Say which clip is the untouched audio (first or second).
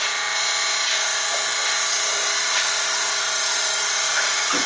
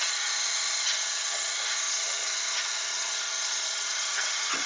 first